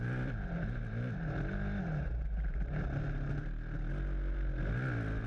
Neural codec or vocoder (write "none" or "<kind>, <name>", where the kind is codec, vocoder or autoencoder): none